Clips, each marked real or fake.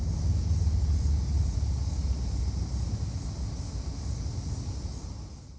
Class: real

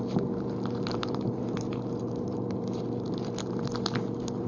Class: fake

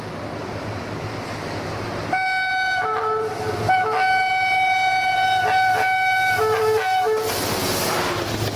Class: real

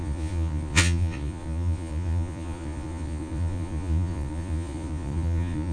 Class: fake